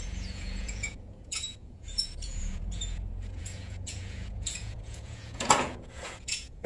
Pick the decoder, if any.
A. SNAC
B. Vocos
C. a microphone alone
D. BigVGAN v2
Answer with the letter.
B